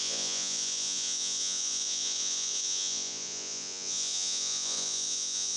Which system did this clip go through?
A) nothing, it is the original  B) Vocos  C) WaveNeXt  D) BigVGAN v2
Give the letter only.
B